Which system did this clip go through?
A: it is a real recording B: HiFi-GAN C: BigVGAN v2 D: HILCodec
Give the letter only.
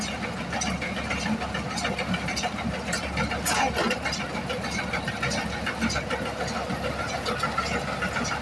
A